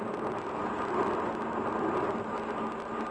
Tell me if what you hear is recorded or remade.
recorded